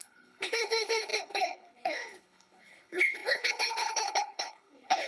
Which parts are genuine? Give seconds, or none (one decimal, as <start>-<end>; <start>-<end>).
none